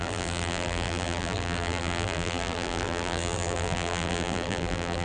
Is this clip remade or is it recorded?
remade